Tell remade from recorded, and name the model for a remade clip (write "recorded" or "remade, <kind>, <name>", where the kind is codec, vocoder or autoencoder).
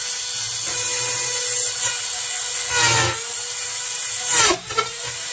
recorded